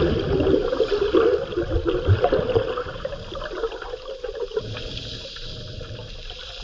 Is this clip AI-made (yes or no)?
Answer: no